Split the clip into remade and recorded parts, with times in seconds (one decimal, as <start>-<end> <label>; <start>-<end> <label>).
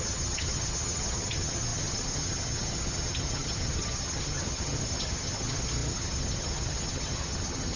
0.0-7.8 remade